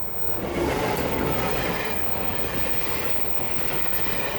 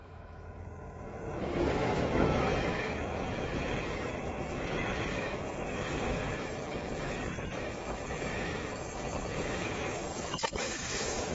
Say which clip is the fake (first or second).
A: second